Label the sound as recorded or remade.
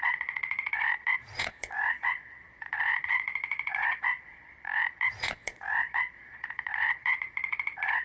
remade